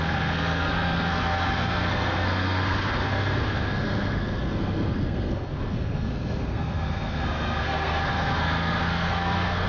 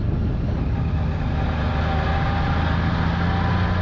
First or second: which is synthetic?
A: first